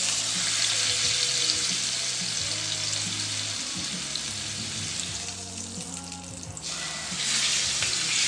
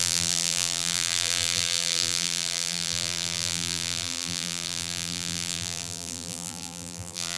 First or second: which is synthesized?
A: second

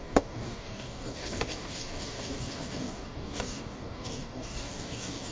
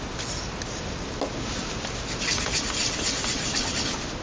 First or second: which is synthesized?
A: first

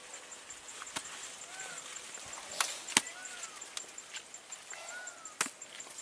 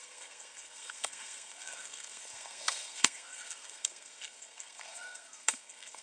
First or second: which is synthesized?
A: second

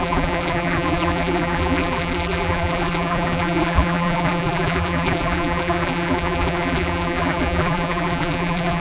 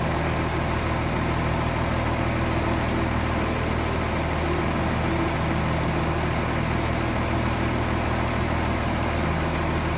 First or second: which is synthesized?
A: first